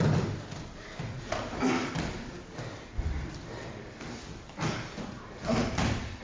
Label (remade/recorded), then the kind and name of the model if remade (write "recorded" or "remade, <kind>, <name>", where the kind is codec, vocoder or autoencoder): remade, vocoder, BigVGAN v2